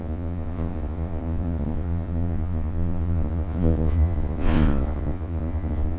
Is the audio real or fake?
fake